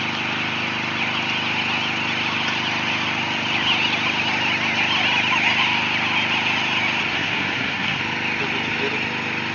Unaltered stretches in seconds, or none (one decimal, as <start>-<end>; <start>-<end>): 0.0-7.1; 8.0-9.5

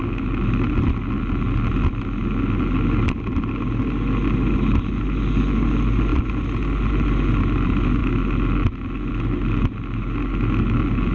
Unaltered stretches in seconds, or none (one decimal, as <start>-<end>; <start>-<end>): 0.0-11.1

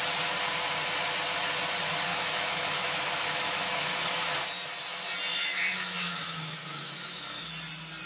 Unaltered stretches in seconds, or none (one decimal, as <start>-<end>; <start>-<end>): 0.0-2.1; 3.7-5.3; 7.5-8.1

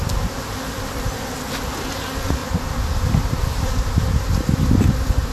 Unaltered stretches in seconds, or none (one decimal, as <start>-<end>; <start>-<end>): 0.0-2.4; 3.7-5.3

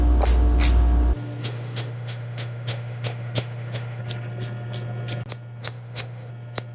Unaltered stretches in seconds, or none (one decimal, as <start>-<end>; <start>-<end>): 0.0-1.4; 4.0-5.6; 6.3-6.7